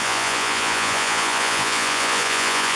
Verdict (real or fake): fake